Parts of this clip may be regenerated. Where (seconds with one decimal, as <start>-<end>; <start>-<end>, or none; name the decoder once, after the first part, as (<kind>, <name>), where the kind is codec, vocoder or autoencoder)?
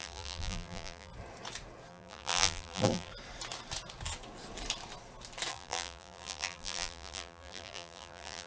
0.0-1.1 (vocoder, BigVGAN v2); 1.9-3.1; 5.5-8.5